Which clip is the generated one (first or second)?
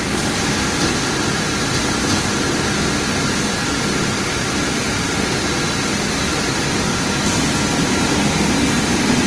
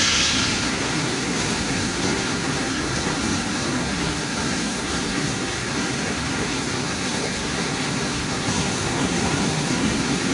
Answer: second